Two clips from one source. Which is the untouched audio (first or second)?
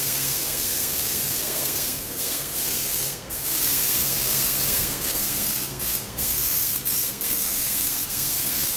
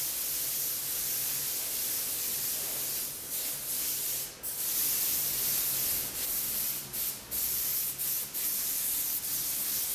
second